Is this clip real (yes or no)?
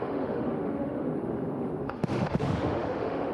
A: no